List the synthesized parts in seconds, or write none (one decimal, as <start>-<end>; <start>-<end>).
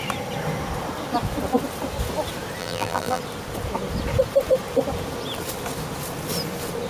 2.6-3.2